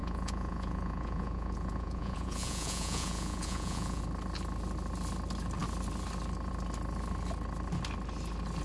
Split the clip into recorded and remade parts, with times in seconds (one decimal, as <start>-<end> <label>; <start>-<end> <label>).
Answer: 0.0-4.0 remade; 4.0-8.6 recorded